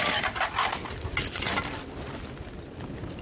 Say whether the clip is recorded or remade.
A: recorded